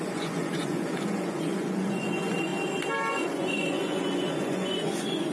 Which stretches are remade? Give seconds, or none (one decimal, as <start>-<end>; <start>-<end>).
0.0-2.5; 3.1-5.3